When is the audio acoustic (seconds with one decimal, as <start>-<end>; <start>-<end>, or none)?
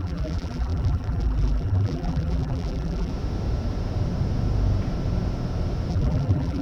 3.1-5.9